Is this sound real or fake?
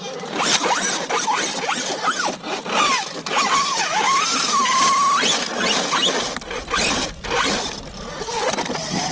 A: real